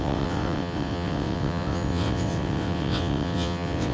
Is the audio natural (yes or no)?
no